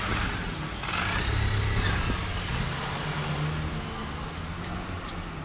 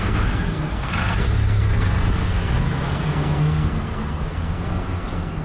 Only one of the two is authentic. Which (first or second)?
first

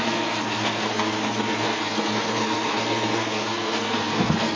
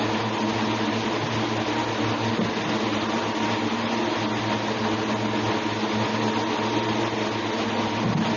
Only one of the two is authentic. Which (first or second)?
second